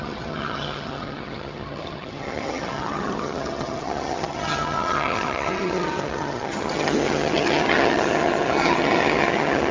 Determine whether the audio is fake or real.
fake